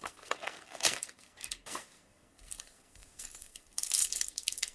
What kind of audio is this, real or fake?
fake